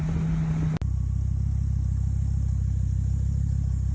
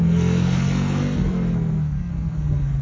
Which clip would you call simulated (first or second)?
second